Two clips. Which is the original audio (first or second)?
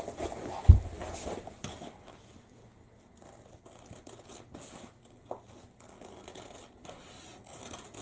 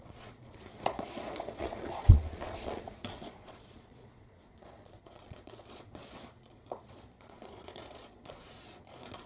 first